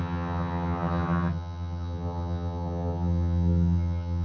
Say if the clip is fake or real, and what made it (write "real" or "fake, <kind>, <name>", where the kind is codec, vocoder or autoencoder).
fake, vocoder, HiFi-GAN